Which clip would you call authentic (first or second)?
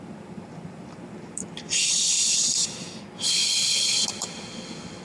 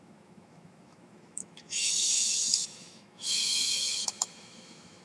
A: first